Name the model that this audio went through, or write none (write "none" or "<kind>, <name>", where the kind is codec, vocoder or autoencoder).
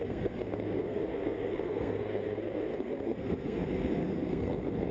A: codec, SNAC